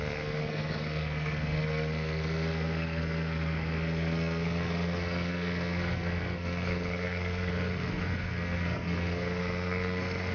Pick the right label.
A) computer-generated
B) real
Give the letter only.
A